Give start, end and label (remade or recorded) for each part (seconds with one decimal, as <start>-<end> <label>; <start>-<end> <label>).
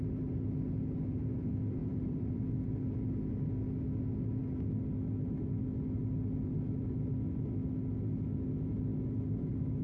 0.0-1.8 recorded; 1.8-2.5 remade; 2.5-9.8 recorded